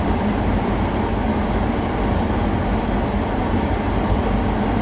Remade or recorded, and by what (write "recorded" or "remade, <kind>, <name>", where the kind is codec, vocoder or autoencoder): recorded